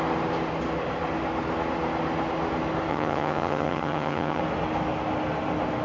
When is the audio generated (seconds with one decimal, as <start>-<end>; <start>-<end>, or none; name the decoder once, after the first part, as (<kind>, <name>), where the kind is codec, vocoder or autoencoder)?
2.9-4.4 (vocoder, HiFi-GAN)